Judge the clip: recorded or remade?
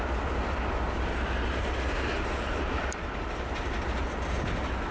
recorded